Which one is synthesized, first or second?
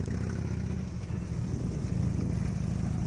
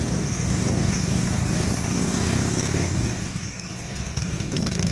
second